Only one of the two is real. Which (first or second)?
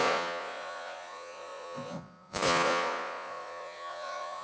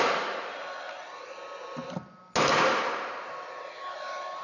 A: second